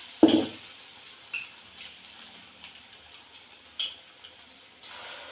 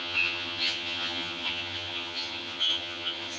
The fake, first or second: second